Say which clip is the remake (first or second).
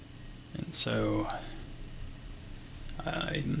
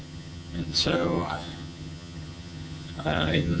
second